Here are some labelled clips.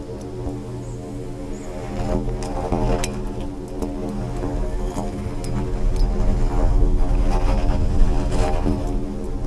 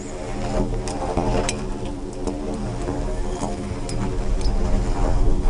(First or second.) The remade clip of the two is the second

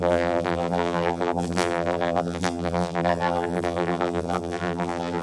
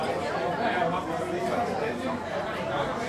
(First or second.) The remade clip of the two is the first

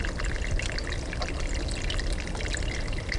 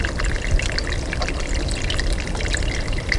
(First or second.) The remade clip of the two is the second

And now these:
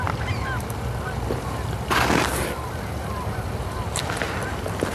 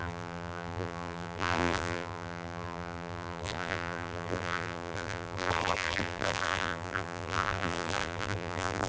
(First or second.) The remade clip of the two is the second